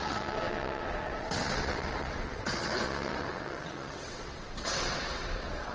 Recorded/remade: remade